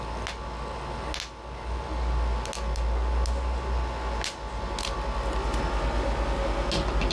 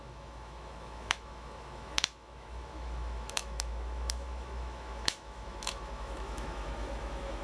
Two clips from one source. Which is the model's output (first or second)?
second